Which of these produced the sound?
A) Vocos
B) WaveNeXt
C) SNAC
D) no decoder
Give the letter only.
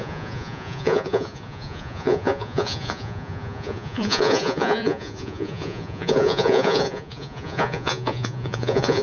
A